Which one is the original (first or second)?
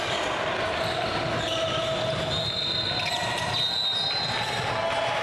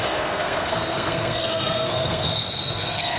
first